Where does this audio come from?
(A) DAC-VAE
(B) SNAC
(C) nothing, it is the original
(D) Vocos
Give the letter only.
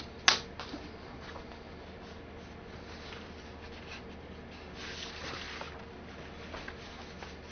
C